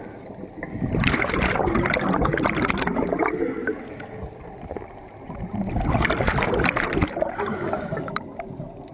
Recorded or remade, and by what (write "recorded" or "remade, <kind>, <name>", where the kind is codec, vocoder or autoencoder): recorded